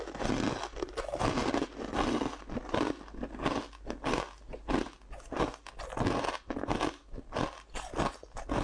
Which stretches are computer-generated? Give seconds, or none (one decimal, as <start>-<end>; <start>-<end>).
1.4-2.4